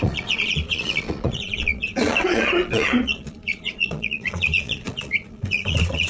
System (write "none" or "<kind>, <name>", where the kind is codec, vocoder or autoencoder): vocoder, Vocos